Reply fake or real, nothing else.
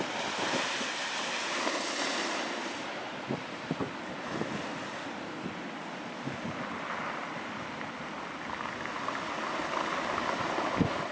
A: real